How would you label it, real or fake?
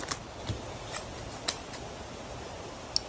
real